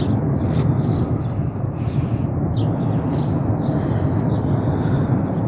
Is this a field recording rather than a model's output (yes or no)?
yes